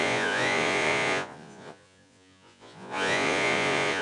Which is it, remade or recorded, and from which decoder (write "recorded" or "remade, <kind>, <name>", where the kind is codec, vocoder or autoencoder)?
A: remade, vocoder, Vocos